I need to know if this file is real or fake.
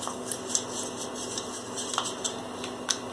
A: real